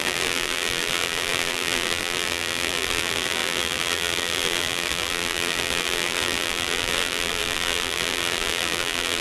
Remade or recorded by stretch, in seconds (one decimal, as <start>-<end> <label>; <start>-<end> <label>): 0.0-9.2 remade